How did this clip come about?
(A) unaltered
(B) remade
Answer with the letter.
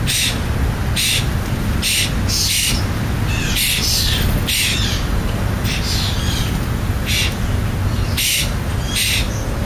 A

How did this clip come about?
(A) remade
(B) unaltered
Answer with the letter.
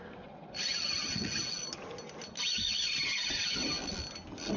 B